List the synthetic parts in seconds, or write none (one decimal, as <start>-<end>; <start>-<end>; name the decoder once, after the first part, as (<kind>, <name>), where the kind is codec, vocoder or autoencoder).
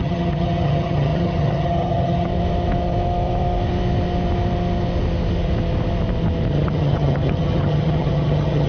0.0-2.3 (vocoder, HiFi-GAN); 6.5-8.7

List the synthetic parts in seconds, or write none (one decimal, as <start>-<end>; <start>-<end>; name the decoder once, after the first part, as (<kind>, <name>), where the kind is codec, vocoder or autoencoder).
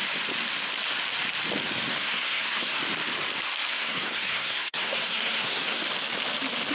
1.9-2.8 (codec, SNAC); 3.7-5.8